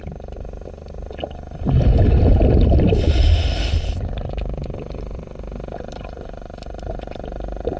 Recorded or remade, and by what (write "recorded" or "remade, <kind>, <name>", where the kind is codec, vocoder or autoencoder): recorded